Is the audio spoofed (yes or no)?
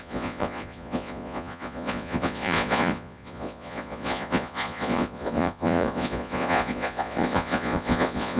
yes